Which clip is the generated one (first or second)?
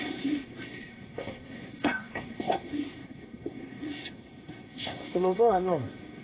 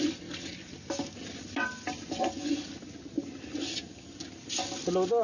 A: first